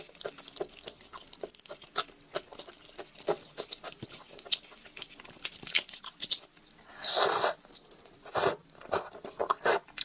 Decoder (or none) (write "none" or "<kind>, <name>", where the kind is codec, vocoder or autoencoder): none